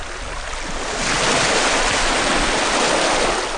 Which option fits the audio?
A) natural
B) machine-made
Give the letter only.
A